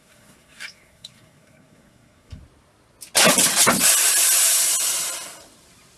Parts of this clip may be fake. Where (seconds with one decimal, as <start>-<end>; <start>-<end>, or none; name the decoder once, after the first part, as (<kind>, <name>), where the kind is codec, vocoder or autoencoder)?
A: 0.0-2.4 (codec, SNAC)